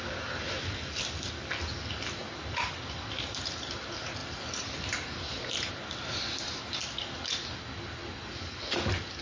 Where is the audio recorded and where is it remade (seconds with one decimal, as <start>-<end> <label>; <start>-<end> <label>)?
0.0-2.2 recorded; 2.2-3.8 remade; 3.8-4.2 recorded; 4.2-5.7 remade; 5.7-9.2 recorded